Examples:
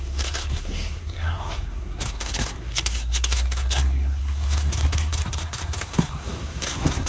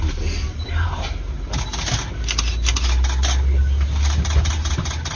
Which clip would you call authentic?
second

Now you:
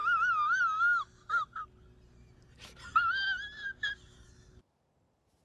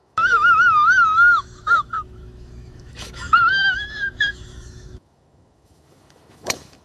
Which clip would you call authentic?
first